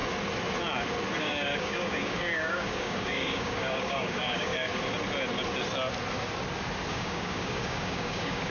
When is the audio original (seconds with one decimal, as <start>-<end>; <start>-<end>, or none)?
0.0-1.2; 4.7-6.9